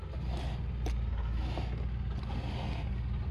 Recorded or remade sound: recorded